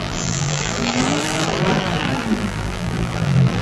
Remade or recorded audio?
remade